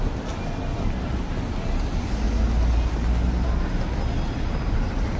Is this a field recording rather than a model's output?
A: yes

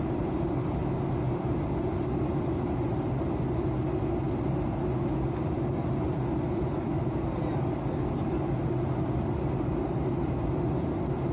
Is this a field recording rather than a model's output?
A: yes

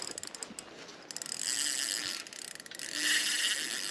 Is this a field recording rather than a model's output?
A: yes